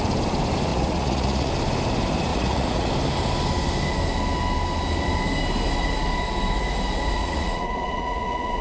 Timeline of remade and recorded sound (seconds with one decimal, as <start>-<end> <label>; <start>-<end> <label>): 0.0-0.7 recorded; 0.7-1.5 remade; 1.5-2.3 recorded; 2.3-2.9 remade; 2.9-7.2 recorded; 7.2-8.6 remade

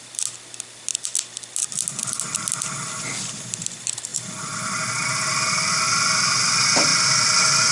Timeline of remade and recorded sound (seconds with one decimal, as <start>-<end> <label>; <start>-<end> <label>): 0.0-7.7 recorded

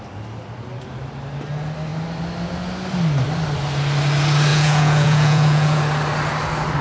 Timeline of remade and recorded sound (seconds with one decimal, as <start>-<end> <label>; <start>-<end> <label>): 0.0-4.5 recorded; 4.5-5.8 remade; 5.8-6.8 recorded

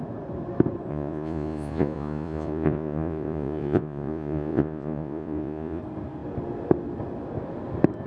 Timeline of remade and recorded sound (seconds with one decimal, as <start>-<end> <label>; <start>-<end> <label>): 0.0-0.9 recorded; 0.9-5.8 remade; 5.8-8.1 recorded

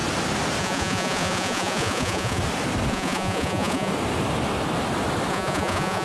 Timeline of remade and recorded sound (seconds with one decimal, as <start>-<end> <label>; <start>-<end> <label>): 0.0-0.6 recorded; 0.6-2.4 remade; 2.4-2.9 recorded; 2.9-3.9 remade; 3.9-5.3 recorded; 5.3-6.0 remade

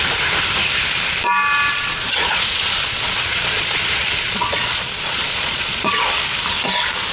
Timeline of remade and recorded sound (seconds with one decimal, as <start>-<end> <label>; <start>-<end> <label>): 0.0-1.7 recorded; 1.7-6.0 remade; 6.0-7.1 recorded